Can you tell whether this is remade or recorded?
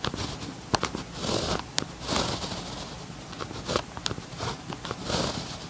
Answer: recorded